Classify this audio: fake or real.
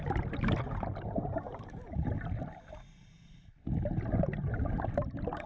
real